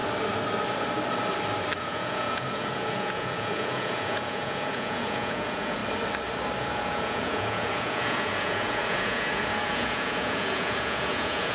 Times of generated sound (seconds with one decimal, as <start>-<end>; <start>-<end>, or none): 1.8-5.8; 6.6-11.5